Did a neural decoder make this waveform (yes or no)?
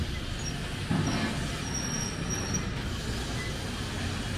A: no